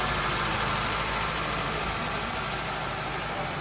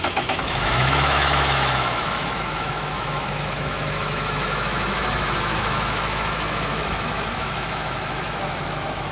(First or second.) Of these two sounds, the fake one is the second